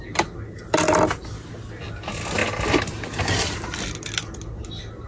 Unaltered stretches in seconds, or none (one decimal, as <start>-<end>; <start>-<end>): 0.0-5.1